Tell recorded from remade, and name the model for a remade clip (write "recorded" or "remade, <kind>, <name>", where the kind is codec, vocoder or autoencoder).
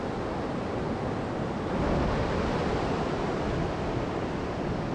recorded